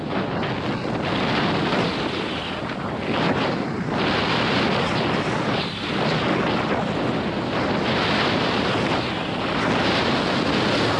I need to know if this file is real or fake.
real